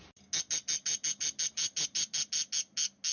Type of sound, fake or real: real